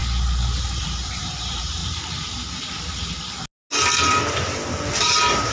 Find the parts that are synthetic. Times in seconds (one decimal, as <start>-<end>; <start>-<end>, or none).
0.8-1.8; 5.0-5.5